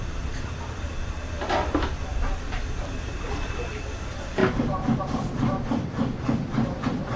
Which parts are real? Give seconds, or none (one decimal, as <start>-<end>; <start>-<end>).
2.1-2.6; 4.4-5.0